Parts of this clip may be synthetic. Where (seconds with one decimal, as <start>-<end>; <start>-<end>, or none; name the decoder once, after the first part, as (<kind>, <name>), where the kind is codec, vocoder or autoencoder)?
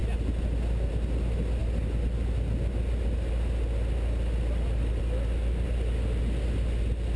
none